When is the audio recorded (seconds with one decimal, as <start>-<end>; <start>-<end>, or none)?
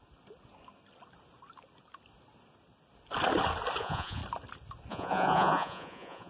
0.0-3.8; 4.2-4.9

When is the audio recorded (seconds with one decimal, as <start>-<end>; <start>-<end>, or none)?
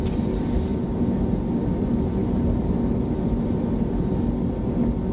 0.0-5.1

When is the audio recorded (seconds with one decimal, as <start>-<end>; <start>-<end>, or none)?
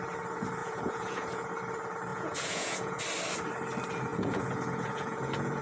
0.0-0.6; 1.5-2.1; 3.0-4.1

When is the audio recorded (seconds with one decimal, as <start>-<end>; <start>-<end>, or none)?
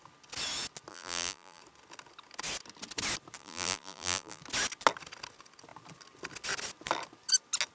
0.0-0.9; 1.6-3.4; 4.4-7.7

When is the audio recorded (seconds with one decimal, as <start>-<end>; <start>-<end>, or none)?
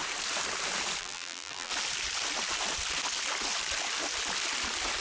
0.0-1.0; 1.7-5.0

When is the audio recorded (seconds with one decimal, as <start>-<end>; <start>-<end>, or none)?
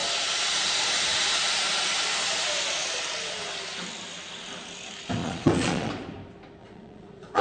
0.0-5.2; 5.9-6.6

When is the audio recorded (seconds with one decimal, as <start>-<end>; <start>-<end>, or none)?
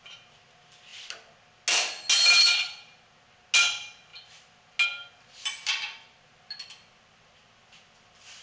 0.0-8.4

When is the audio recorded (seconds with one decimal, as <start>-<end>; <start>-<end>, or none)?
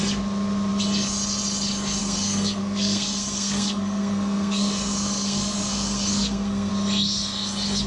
0.0-2.0; 6.7-7.9